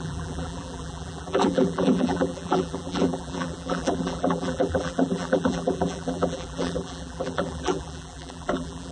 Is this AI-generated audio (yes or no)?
yes